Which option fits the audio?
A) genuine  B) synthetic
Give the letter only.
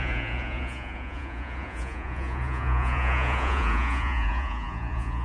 B